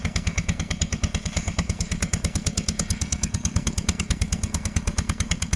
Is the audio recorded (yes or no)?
no